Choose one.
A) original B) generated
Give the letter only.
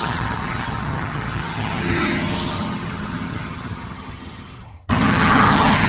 B